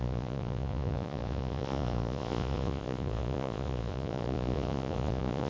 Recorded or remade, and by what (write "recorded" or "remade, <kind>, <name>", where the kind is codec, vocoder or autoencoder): remade, vocoder, Vocos